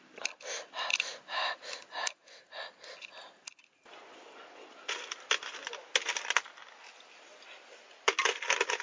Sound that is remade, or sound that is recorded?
recorded